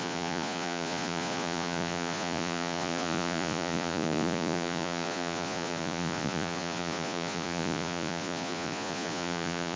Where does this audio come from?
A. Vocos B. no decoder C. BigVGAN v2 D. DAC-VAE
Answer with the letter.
A